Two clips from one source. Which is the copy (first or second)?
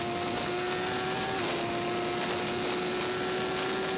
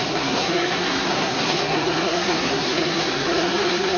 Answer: second